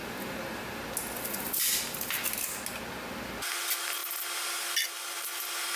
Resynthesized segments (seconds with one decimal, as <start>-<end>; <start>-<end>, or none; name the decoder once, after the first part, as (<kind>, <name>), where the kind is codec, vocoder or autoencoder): none